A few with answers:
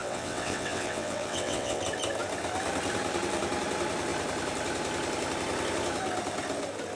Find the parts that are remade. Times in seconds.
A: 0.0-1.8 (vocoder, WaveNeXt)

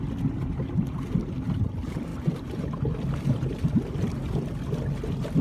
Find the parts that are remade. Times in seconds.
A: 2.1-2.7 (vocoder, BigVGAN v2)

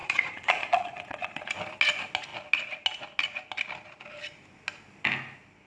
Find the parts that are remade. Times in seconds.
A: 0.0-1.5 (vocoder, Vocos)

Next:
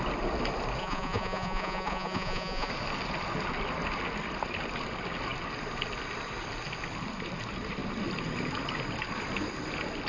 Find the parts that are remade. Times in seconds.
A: 0.8-2.7 (vocoder, Vocos)

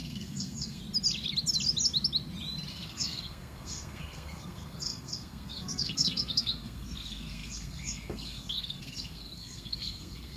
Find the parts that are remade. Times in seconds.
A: 0.0-0.8 (codec, SNAC); 2.7-10.4

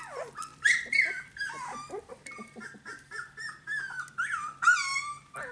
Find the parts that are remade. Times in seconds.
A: 0.5-3.8 (vocoder, BigVGAN v2)